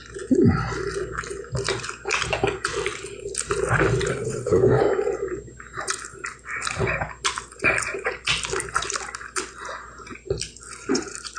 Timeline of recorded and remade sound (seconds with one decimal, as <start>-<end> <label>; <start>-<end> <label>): 0.0-4.1 recorded; 4.1-4.8 remade; 4.8-11.4 recorded